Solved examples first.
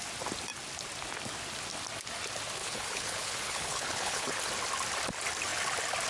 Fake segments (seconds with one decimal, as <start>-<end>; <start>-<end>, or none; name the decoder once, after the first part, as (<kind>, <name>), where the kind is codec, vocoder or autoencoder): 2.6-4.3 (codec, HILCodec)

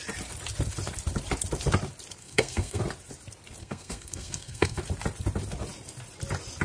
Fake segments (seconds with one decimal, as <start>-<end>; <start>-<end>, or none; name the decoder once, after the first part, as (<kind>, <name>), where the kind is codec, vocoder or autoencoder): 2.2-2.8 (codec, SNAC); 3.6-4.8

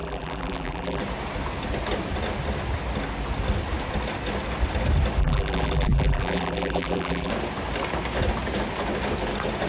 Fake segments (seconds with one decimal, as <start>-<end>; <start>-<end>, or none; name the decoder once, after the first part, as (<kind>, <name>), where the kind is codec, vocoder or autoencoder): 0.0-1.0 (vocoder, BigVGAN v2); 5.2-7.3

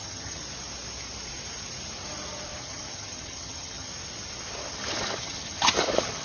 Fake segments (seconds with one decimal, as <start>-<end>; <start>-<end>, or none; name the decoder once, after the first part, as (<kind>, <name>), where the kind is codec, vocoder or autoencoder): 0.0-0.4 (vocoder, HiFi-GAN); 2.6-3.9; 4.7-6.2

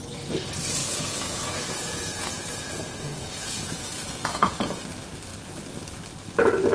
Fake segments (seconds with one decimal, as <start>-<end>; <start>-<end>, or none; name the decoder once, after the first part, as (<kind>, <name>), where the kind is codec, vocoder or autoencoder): 0.8-4.8 (vocoder, Vocos)

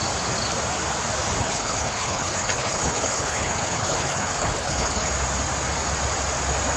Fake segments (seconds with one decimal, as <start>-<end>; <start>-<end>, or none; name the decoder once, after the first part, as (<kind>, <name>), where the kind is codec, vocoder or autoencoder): 1.4-5.1 (codec, HILCodec)